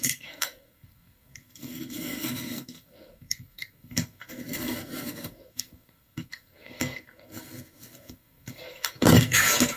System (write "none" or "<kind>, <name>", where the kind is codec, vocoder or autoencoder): codec, SNAC